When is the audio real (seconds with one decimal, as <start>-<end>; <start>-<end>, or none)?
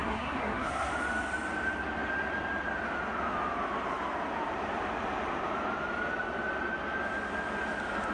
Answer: 0.9-8.1